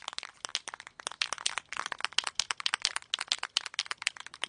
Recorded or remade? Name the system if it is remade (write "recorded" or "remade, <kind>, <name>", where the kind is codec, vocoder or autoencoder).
recorded